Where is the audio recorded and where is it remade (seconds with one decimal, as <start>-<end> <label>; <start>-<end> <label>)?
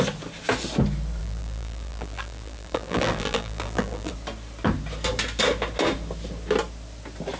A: 0.0-1.2 recorded; 1.2-4.1 remade; 4.1-7.4 recorded